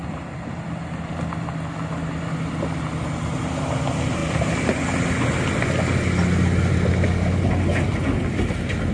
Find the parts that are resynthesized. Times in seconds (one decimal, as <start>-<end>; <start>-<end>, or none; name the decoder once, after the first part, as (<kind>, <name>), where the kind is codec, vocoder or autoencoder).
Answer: none